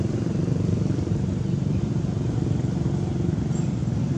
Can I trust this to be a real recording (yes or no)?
no